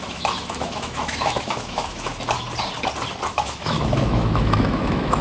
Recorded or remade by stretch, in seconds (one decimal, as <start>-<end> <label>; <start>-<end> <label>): 0.0-2.1 remade; 2.1-3.3 recorded; 3.3-5.2 remade